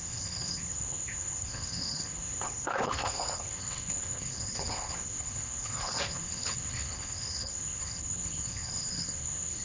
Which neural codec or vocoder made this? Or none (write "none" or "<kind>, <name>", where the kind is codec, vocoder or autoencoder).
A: codec, HILCodec